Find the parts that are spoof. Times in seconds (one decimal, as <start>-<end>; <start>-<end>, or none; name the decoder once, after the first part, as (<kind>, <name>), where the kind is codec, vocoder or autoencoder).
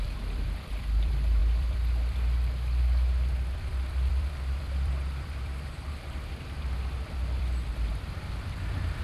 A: 0.0-9.0 (vocoder, BigVGAN v2)